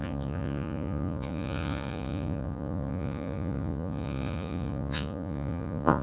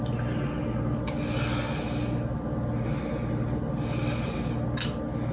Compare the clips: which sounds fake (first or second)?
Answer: first